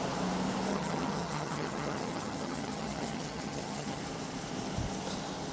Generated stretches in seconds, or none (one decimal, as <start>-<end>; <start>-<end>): 0.7-4.0